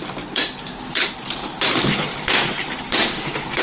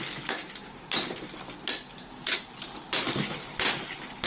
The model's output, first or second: first